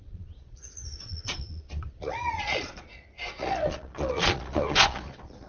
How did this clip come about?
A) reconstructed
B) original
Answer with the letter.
A